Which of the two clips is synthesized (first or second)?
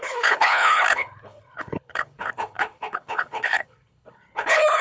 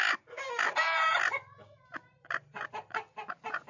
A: first